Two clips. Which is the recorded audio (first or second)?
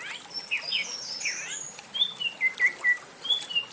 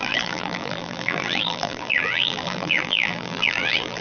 first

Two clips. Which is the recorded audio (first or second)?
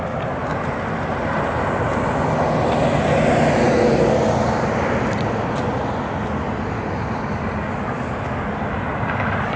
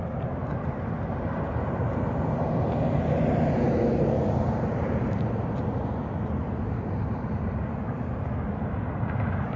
first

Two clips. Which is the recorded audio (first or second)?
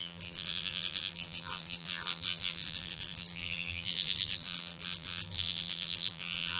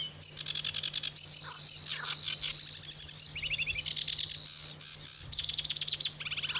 second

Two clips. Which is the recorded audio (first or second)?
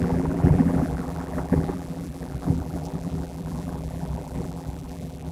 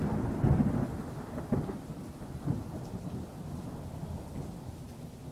second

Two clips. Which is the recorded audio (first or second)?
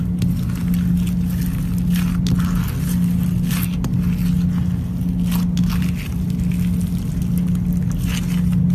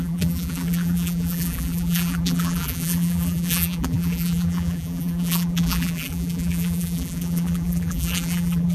first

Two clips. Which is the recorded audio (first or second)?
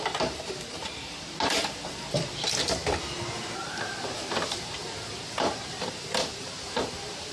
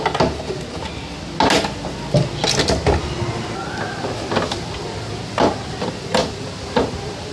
second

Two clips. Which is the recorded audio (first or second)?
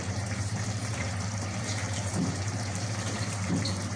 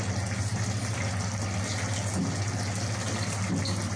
second